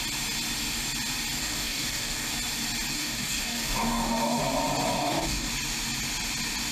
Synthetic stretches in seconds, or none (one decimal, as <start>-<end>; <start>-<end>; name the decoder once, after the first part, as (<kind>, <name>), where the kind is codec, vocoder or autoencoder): 1.4-2.3 (codec, DAC); 2.9-4.4; 4.9-5.5

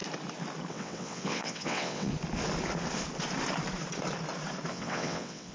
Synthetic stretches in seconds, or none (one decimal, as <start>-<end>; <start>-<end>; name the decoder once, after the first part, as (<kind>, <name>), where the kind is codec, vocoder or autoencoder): 0.7-2.1 (vocoder, WaveNeXt); 4.7-5.5

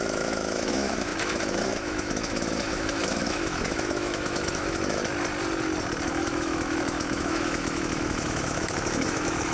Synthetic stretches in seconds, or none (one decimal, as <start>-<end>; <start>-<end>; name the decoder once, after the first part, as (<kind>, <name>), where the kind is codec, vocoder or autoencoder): 0.0-5.0 (autoencoder, DAC-VAE); 6.1-9.5

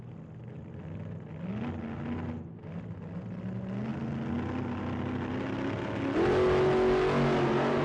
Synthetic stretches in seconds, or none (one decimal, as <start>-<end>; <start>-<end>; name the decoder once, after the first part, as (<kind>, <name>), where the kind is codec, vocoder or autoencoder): none